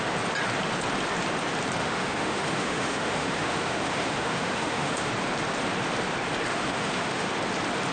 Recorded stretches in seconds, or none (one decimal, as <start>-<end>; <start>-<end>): 0.0-1.8; 5.1-6.5; 7.3-7.9